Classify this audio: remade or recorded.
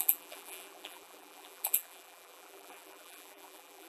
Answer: remade